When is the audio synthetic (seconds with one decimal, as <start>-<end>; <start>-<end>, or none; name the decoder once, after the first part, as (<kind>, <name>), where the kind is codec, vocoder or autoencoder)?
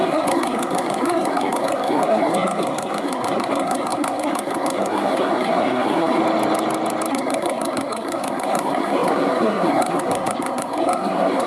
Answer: 0.0-6.2 (codec, SNAC); 7.1-11.5